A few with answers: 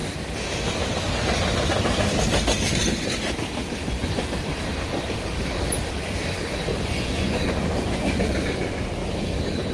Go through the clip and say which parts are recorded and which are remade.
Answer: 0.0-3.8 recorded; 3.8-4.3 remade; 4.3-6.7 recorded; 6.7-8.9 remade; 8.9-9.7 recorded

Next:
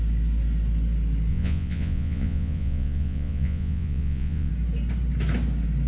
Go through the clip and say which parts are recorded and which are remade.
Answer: 0.0-1.3 recorded; 1.3-4.5 remade; 4.5-5.9 recorded

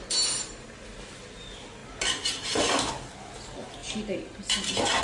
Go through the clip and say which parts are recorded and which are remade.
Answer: 0.0-5.0 recorded

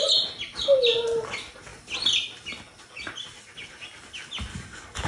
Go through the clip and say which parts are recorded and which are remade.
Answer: 0.0-4.5 recorded; 4.5-5.1 remade